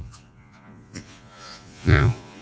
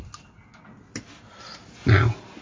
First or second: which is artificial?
first